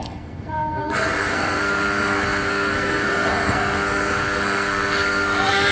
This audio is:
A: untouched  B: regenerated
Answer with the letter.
B